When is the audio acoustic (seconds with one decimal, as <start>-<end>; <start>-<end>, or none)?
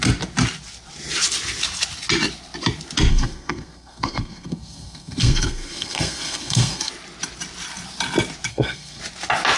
0.0-3.1; 6.9-8.5; 9.0-9.6